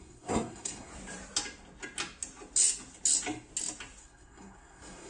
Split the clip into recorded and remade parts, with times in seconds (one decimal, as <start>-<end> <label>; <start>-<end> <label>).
0.0-0.9 remade; 0.9-4.0 recorded; 4.0-5.1 remade